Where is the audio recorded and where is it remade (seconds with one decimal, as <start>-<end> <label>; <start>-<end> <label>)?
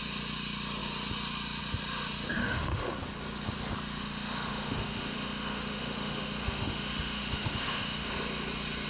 0.0-2.4 recorded; 2.4-2.9 remade; 2.9-4.0 recorded; 4.0-8.1 remade; 8.1-8.9 recorded